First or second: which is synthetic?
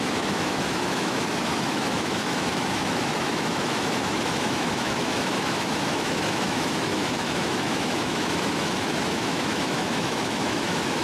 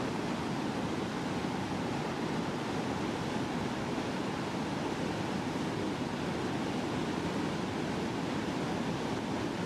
first